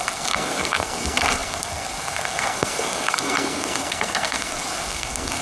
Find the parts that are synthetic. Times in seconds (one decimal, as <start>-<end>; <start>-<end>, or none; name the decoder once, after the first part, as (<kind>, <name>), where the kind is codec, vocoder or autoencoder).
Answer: 0.0-5.4 (codec, SNAC)